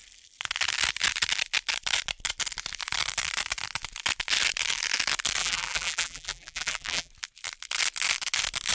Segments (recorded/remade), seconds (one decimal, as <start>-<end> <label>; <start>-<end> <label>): 0.0-5.4 recorded; 5.4-7.1 remade; 7.1-8.7 recorded